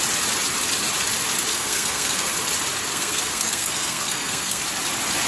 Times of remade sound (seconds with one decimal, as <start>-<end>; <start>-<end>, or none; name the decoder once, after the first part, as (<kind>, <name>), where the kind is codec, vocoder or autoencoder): 1.5-2.3 (codec, SNAC); 2.9-4.6